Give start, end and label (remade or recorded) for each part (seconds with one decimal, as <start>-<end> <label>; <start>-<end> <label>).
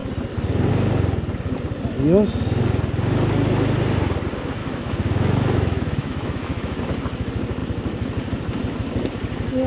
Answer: 0.0-4.6 recorded; 4.6-6.8 remade; 6.8-9.7 recorded